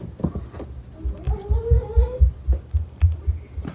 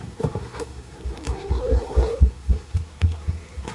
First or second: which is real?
first